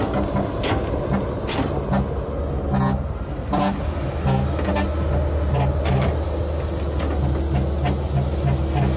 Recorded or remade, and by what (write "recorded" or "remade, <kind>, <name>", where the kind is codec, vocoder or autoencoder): recorded